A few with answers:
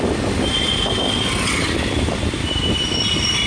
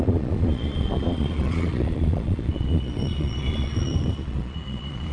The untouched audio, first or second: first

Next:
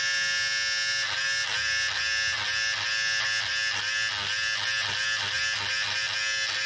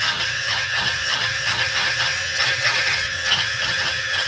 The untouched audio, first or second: first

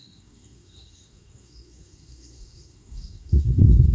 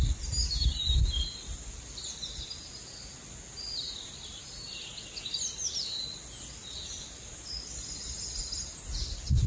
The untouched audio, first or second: second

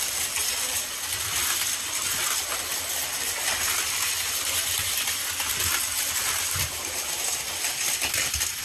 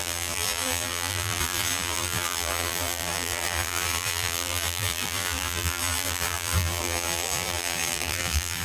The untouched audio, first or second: first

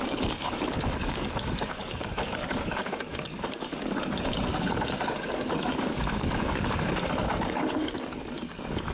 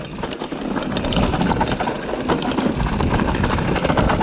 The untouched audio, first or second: second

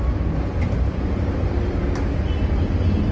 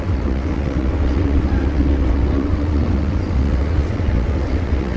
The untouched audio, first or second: first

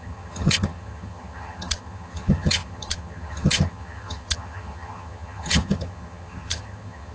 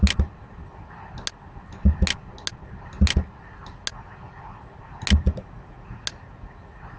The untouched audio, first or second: second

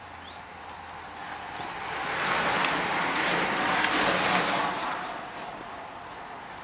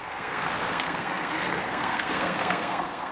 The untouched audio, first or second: first